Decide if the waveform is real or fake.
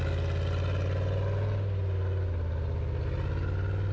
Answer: real